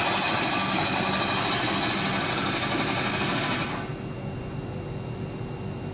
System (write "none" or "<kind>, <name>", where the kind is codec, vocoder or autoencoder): none